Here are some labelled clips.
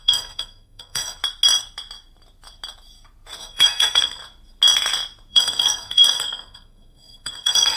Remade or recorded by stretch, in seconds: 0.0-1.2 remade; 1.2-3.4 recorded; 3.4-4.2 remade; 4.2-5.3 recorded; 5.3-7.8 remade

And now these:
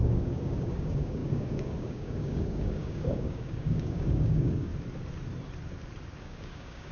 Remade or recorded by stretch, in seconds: 0.0-4.7 remade; 4.7-6.2 recorded; 6.2-6.9 remade

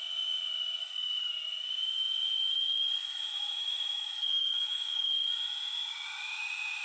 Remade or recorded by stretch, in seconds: 0.0-0.8 recorded; 0.8-1.3 remade; 1.3-3.0 recorded; 3.0-5.1 remade; 5.1-6.8 recorded

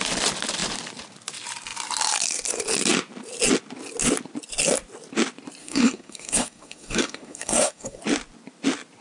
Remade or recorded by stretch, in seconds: 0.0-5.6 recorded; 5.6-8.0 remade; 8.0-9.0 recorded

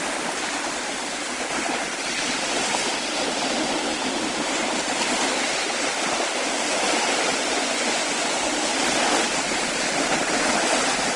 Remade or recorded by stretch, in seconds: 0.0-7.3 recorded; 7.3-8.5 remade; 8.5-11.2 recorded